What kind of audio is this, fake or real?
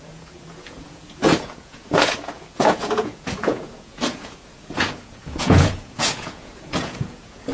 fake